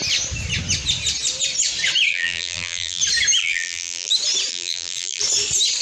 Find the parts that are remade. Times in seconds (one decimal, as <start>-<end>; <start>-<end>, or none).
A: 2.1-3.0; 3.4-4.1; 4.5-5.2